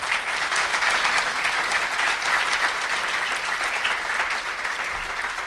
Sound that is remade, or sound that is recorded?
recorded